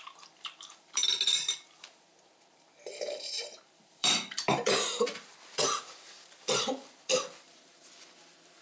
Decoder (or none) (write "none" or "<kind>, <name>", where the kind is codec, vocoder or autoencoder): vocoder, BigVGAN v2